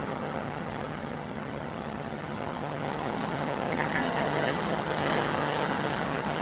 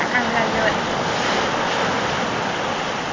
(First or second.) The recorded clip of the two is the second